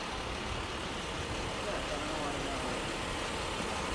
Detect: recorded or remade recorded